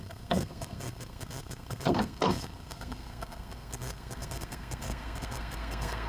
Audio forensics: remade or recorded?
remade